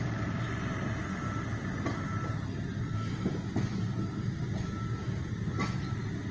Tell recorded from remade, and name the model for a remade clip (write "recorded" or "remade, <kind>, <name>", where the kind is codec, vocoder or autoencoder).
recorded